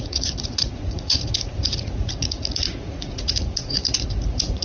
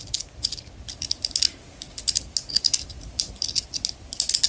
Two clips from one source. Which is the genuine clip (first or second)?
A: second